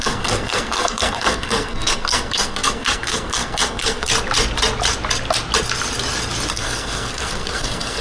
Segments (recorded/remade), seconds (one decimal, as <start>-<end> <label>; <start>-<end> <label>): 0.0-4.1 remade; 4.1-6.5 recorded; 6.5-8.0 remade